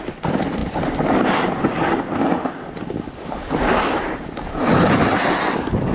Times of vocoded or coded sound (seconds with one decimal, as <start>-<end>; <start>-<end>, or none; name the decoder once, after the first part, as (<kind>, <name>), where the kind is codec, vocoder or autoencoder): none